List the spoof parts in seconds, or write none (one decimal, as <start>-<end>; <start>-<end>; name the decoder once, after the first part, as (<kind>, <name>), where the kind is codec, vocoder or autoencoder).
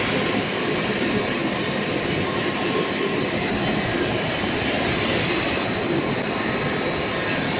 1.4-6.0 (vocoder, BigVGAN v2)